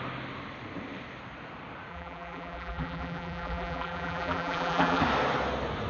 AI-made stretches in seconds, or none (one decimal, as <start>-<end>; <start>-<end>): 1.9-5.0